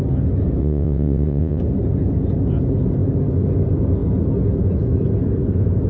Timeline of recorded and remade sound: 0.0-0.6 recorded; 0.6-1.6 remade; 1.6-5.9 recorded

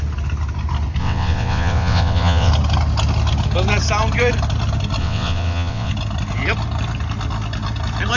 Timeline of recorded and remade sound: 0.0-1.0 recorded; 1.0-2.5 remade; 2.5-5.0 recorded; 5.0-5.9 remade; 5.9-8.2 recorded

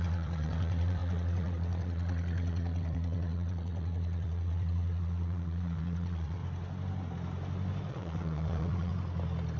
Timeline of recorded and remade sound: 0.0-6.4 remade; 6.4-7.9 recorded; 7.9-8.9 remade; 8.9-9.6 recorded

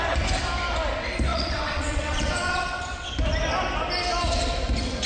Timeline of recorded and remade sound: 0.0-1.3 recorded; 1.3-3.1 remade; 3.1-5.1 recorded

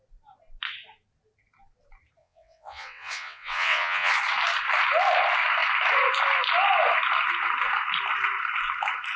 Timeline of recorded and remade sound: 0.0-2.2 recorded; 2.2-4.1 remade; 4.1-9.2 recorded

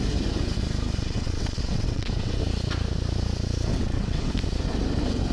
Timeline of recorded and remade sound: 0.0-1.0 recorded; 1.0-2.4 remade; 2.4-3.7 recorded; 3.7-4.3 remade; 4.3-5.3 recorded

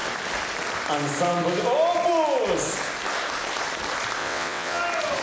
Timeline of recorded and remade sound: 0.0-4.2 recorded; 4.2-4.8 remade; 4.8-5.2 recorded